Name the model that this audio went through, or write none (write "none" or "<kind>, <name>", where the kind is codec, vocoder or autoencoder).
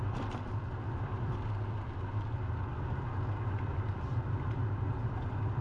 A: none